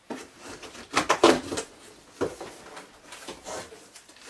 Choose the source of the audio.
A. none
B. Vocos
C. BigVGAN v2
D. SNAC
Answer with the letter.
A